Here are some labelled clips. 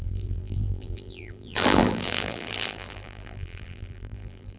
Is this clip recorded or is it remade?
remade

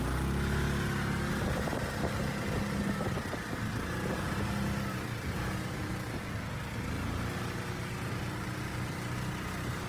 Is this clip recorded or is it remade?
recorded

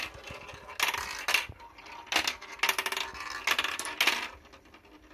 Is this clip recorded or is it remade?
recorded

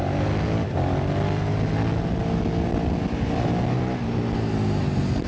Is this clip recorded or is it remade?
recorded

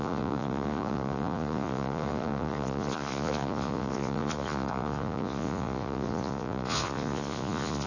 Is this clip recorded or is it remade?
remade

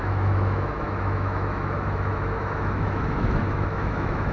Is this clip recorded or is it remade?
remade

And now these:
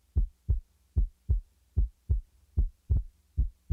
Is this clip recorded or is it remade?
remade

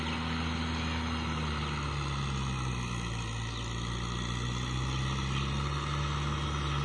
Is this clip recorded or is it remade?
recorded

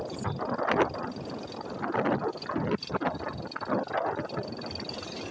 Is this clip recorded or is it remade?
recorded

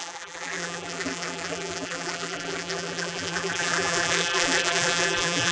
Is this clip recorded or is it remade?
remade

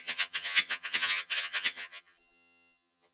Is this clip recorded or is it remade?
remade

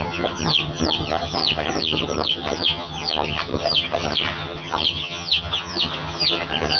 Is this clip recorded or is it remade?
remade